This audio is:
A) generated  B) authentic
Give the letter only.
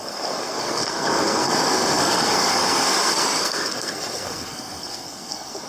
A